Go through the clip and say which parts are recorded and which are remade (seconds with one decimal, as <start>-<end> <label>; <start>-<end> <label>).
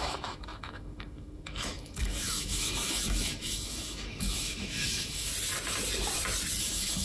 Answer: 0.0-5.3 remade; 5.3-6.6 recorded; 6.6-7.0 remade